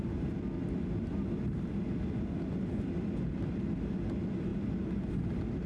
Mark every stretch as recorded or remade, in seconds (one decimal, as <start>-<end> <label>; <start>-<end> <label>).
0.0-5.7 recorded